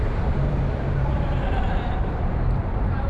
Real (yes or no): no